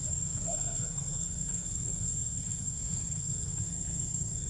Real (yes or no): no